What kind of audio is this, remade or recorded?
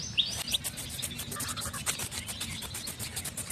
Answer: recorded